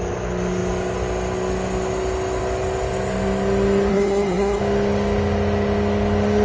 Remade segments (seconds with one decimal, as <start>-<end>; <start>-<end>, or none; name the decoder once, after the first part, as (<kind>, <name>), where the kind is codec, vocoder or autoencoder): 3.9-4.6 (codec, SNAC)